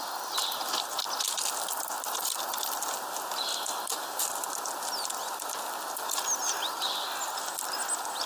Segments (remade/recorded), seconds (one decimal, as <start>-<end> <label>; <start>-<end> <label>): 0.0-8.3 recorded